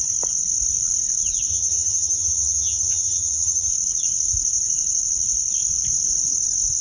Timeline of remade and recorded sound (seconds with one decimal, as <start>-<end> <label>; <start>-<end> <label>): 0.0-1.5 recorded; 1.5-3.7 remade; 3.7-6.8 recorded